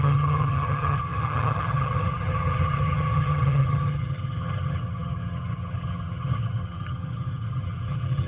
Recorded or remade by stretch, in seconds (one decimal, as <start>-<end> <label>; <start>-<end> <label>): 0.0-8.3 remade